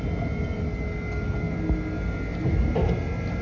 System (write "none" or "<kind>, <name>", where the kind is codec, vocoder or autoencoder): none